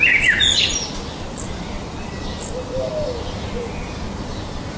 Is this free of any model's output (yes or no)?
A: yes